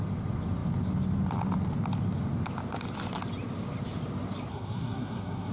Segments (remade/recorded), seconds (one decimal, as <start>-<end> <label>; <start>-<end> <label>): 0.0-4.5 recorded; 4.5-5.5 remade